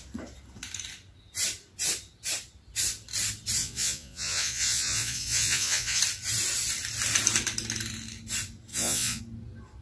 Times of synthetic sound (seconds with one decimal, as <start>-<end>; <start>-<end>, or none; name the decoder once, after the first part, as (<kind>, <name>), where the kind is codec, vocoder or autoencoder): 3.6-6.0 (vocoder, Vocos); 8.7-9.2